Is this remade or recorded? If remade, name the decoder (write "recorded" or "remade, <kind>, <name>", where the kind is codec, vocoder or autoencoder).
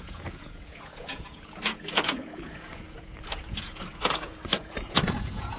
remade, vocoder, Vocos